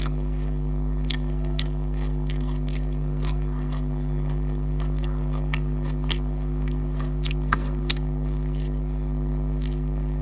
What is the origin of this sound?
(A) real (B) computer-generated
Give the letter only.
B